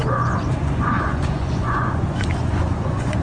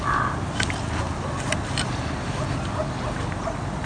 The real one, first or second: second